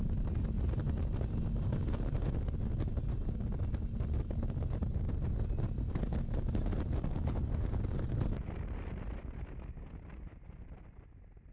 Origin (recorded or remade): recorded